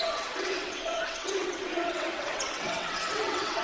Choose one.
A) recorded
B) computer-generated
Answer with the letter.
B